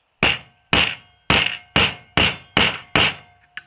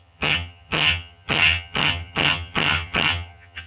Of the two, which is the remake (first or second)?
second